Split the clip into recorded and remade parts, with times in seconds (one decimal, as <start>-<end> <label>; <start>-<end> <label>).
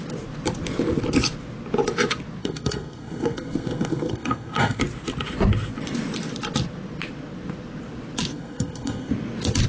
0.0-2.4 recorded; 2.4-4.8 remade; 4.8-8.3 recorded; 8.3-9.1 remade; 9.1-9.7 recorded